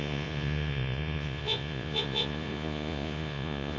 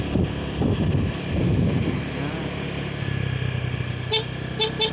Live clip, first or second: second